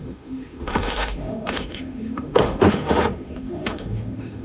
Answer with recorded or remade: remade